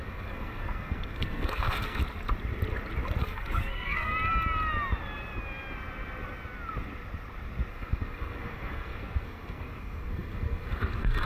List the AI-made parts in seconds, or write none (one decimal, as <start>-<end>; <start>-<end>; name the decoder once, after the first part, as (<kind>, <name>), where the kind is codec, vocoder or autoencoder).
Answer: 0.0-2.0 (codec, SNAC); 3.2-4.1; 7.7-11.3